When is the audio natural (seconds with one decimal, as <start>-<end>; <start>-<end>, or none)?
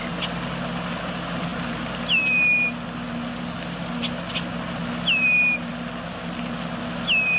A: 0.0-7.4